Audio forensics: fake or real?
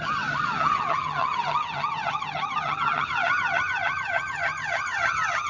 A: fake